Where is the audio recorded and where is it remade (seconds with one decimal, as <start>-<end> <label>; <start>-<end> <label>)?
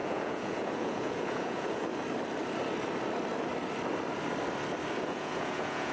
0.0-1.9 remade; 1.9-5.0 recorded; 5.0-5.9 remade